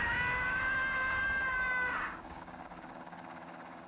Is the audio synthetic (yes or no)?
yes